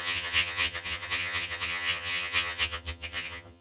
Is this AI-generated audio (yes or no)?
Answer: yes